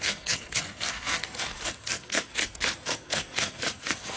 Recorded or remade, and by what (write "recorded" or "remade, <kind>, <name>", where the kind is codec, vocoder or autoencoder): remade, codec, SNAC